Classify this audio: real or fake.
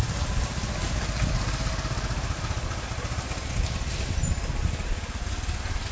real